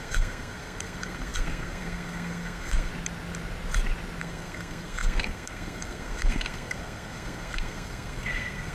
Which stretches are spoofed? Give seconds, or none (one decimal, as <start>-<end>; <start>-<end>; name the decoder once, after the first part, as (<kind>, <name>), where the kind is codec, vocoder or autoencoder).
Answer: 0.0-2.9 (codec, SNAC); 4.2-8.7